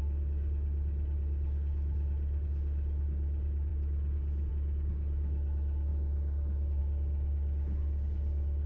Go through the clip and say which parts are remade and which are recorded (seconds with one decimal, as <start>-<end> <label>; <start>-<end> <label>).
0.0-8.7 recorded